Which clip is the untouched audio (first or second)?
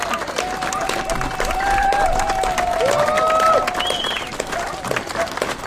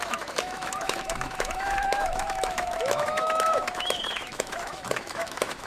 first